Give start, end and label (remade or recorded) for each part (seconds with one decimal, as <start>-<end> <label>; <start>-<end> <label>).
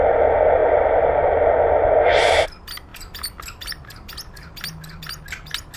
0.0-2.9 recorded; 2.9-5.1 remade; 5.1-5.8 recorded